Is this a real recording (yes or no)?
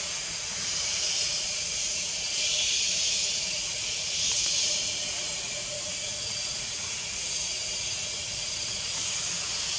no